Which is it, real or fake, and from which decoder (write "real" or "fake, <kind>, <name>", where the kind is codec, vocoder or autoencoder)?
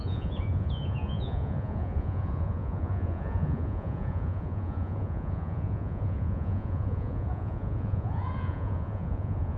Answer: fake, vocoder, Vocos